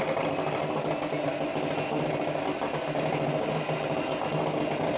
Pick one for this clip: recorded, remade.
recorded